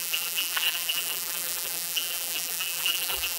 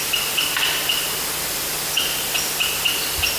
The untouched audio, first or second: second